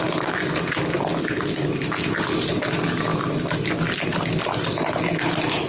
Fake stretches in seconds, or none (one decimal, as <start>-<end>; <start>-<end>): none